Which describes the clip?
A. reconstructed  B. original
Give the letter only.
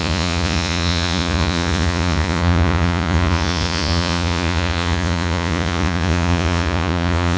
A